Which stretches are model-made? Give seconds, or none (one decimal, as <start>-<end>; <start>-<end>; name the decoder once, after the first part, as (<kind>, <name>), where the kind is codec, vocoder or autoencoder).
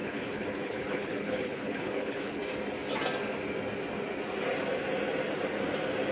0.0-2.4 (codec, HILCodec)